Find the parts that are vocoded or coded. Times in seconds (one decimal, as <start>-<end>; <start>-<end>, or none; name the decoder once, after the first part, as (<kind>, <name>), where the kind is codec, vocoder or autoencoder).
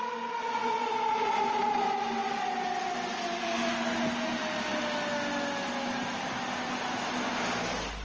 0.6-1.6 (vocoder, BigVGAN v2)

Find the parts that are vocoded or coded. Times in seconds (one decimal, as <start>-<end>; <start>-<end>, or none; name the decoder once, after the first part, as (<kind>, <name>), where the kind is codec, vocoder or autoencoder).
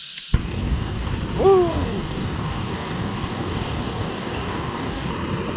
0.4-1.1 (codec, DAC); 1.7-5.1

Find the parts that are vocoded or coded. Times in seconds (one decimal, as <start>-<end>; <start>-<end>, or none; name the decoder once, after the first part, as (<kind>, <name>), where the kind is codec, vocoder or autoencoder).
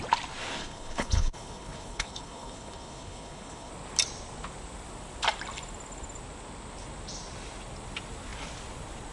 0.6-3.7 (codec, HILCodec)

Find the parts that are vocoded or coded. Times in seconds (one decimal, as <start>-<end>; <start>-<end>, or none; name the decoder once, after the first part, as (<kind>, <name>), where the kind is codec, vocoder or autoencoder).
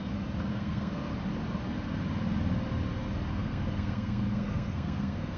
0.5-1.1 (codec, SNAC); 3.4-5.4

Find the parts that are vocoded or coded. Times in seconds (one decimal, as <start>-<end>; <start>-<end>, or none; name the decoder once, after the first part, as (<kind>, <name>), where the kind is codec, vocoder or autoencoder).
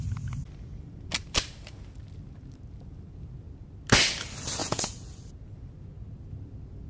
4.6-5.1 (vocoder, Vocos)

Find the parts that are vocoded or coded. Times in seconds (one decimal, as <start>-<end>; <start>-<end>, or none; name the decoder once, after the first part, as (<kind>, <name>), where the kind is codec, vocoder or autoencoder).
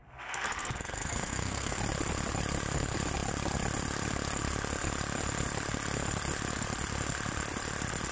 0.0-1.8 (codec, SNAC)